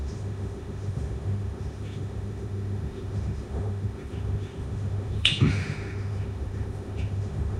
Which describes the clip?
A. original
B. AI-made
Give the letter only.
B